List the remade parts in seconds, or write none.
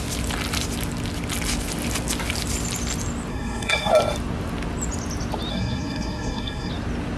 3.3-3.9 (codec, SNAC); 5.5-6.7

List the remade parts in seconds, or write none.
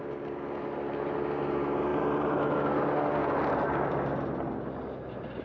none